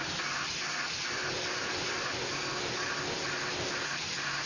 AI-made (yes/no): no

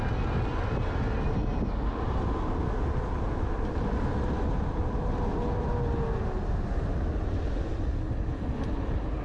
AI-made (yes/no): no